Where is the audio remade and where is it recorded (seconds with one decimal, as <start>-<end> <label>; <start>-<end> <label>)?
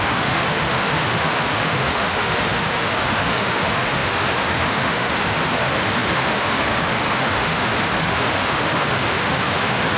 0.0-10.0 remade